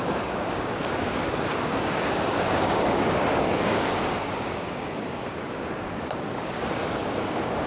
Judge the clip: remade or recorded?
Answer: remade